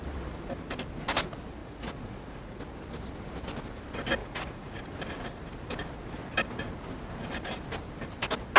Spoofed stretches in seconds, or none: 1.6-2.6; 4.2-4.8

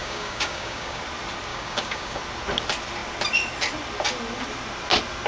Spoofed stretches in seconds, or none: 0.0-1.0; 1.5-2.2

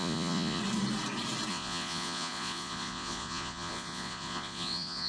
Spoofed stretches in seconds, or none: 0.0-0.6; 1.5-5.1

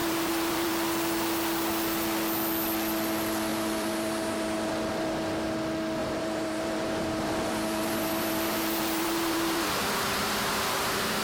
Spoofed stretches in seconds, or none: 0.0-0.7; 3.5-4.7; 6.0-11.2

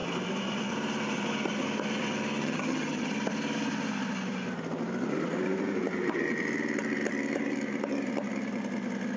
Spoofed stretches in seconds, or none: 2.4-3.1